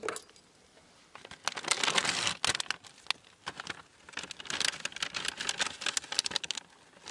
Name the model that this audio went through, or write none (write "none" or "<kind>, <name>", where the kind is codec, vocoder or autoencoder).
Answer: none